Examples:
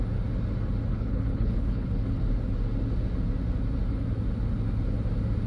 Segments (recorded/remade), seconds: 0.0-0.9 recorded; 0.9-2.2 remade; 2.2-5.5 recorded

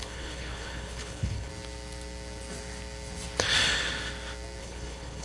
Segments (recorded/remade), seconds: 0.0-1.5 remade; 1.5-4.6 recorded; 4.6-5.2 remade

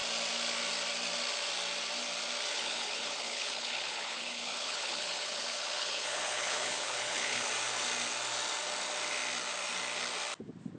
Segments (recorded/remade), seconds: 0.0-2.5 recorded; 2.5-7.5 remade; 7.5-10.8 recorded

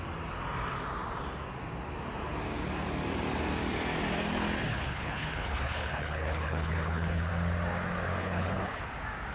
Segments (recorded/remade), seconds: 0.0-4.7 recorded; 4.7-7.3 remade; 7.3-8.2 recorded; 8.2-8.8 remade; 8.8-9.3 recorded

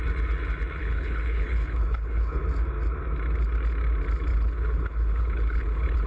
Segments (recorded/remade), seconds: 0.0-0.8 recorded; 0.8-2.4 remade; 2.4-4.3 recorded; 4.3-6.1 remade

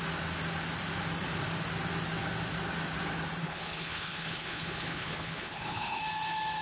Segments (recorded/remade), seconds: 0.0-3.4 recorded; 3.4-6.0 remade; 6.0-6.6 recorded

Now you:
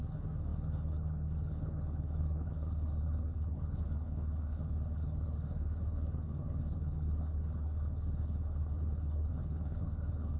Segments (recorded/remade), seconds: 0.0-10.4 remade

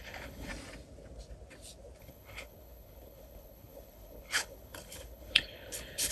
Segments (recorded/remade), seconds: 0.0-0.5 remade; 0.5-2.0 recorded; 2.0-6.1 remade